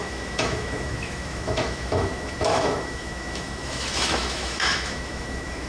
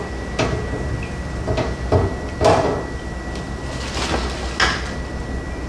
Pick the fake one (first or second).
first